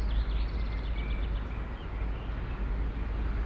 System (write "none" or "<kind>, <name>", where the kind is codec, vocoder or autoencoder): none